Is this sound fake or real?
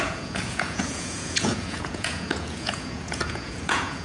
fake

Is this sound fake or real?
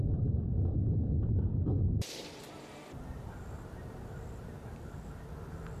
fake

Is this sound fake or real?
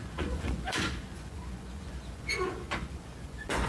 fake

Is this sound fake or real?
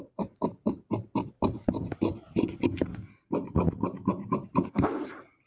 fake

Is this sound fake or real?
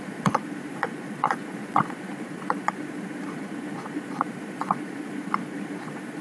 fake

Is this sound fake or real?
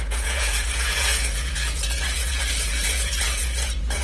fake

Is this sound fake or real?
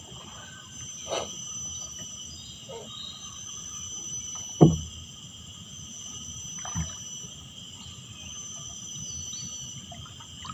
real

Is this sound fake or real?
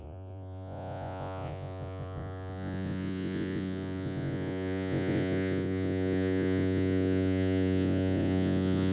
fake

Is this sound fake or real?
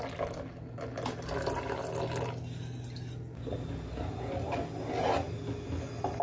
real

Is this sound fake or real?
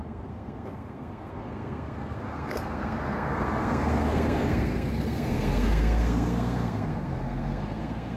fake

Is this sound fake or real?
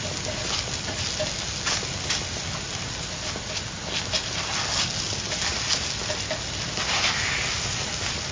real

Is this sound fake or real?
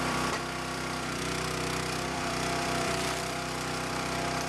fake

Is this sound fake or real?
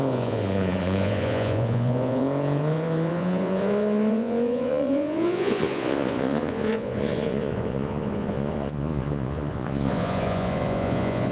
fake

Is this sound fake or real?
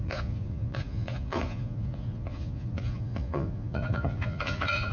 fake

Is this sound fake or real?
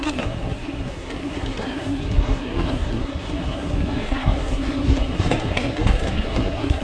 fake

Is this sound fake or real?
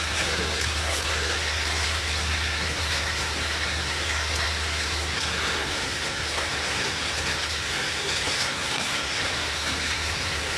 fake